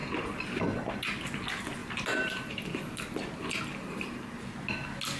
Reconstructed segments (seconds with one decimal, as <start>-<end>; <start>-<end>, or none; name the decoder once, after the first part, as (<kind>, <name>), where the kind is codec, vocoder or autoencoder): 1.8-4.4 (vocoder, BigVGAN v2)

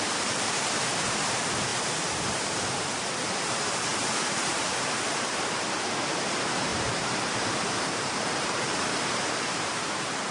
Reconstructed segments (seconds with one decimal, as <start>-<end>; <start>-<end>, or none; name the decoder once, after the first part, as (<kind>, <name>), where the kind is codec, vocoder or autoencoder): 0.0-1.7 (vocoder, BigVGAN v2); 2.3-10.3

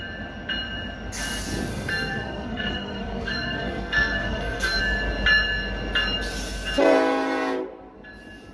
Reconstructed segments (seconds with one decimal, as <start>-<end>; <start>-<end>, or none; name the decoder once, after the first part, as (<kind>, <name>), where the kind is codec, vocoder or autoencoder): 1.7-4.8 (codec, SNAC)

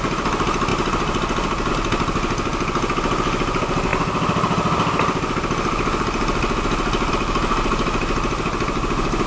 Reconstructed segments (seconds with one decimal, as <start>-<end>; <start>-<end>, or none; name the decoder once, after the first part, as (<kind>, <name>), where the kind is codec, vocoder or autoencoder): none

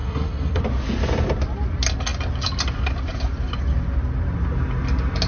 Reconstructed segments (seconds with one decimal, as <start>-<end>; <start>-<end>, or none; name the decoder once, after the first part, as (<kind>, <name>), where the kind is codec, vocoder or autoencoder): 0.0-0.6 (codec, SNAC)

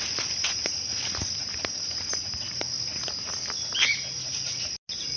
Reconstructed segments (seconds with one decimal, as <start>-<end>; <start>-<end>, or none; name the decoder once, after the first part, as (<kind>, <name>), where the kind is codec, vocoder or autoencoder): none